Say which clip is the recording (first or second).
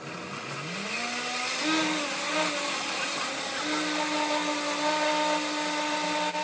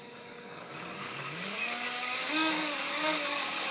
first